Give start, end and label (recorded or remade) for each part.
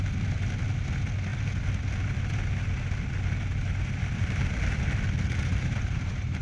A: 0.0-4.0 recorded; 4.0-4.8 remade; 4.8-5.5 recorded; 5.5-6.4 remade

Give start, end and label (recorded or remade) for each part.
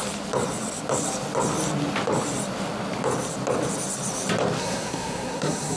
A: 0.0-4.6 recorded; 4.6-5.8 remade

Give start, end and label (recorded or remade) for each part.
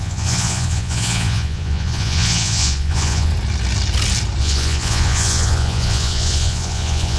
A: 0.0-3.3 remade; 3.3-4.4 recorded; 4.4-7.2 remade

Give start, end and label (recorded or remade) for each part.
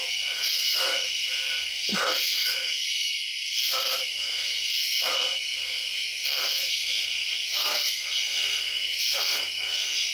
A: 0.0-10.1 remade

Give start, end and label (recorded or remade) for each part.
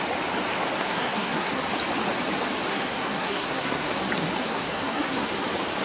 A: 0.0-0.8 recorded; 0.8-1.6 remade; 1.6-2.7 recorded; 2.7-4.0 remade; 4.0-4.4 recorded; 4.4-5.3 remade; 5.3-5.8 recorded